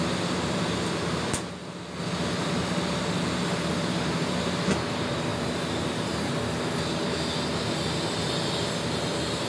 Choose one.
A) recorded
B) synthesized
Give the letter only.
A